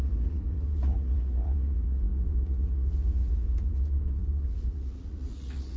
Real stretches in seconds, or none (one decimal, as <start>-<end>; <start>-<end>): none